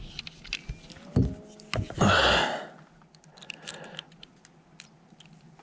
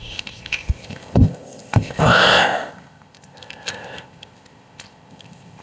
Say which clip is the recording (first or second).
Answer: first